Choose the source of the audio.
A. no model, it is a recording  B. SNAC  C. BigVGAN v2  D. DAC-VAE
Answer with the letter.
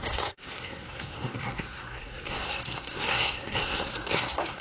B